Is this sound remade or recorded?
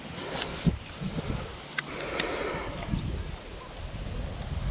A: recorded